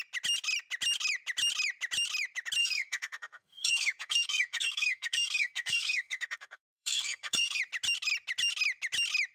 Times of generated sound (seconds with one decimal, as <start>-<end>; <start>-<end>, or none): 2.6-7.6